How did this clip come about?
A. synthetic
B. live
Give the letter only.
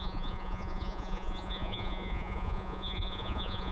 A